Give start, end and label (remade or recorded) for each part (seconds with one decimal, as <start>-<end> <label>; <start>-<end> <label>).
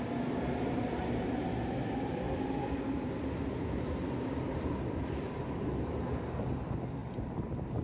0.0-7.8 recorded